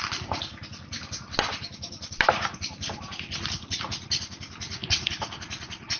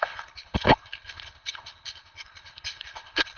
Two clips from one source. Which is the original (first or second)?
first